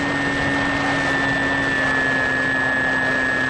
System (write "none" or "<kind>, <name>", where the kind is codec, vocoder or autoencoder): none